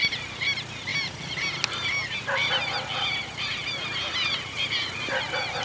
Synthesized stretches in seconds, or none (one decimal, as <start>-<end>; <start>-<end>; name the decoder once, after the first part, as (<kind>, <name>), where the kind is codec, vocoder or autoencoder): none